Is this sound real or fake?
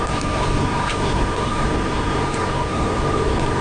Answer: fake